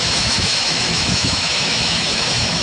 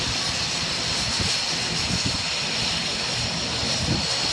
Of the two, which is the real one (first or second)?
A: second